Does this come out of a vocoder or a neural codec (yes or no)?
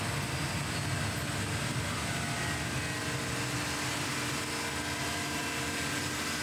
no